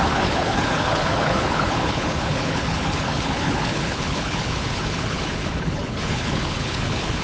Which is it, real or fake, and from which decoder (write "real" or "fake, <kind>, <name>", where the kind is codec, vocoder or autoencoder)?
fake, codec, HILCodec